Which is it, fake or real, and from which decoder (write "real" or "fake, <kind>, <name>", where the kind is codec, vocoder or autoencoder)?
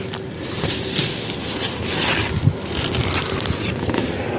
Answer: real